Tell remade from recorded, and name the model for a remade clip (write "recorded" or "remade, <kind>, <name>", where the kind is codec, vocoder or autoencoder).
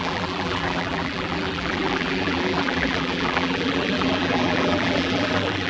remade, vocoder, BigVGAN v2